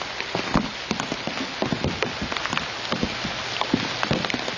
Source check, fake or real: real